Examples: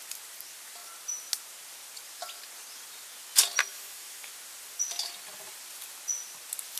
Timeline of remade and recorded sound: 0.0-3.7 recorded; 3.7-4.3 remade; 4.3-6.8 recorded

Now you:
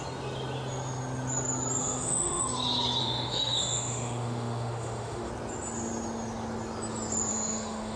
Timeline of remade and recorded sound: 0.0-1.8 recorded; 1.8-2.4 remade; 2.4-3.0 recorded; 3.0-5.3 remade; 5.3-7.3 recorded; 7.3-8.0 remade

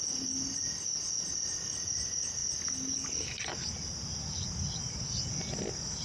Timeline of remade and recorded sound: 0.0-6.0 recorded

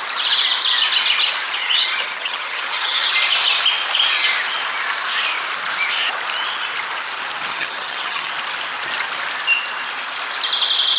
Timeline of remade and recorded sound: 0.0-1.6 recorded; 1.6-3.1 remade; 3.1-7.5 recorded; 7.5-8.3 remade; 8.3-11.0 recorded

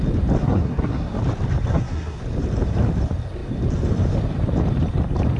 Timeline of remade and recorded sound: 0.0-0.4 recorded; 0.4-1.2 remade; 1.2-1.7 recorded; 1.7-2.2 remade; 2.2-5.4 recorded

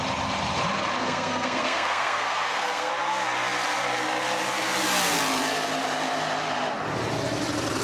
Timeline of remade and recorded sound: 0.0-1.0 recorded; 1.0-2.9 remade; 2.9-7.8 recorded

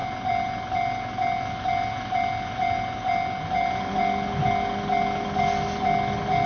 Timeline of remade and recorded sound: 0.0-6.5 recorded